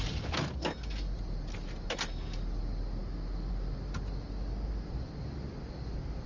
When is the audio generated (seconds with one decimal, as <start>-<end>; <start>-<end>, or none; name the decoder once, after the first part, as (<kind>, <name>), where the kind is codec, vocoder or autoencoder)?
none